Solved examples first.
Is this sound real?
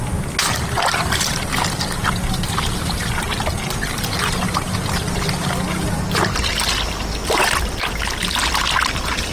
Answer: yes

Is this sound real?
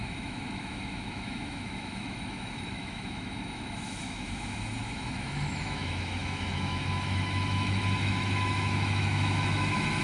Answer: no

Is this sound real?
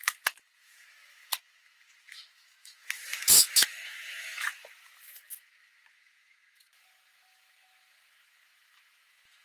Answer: no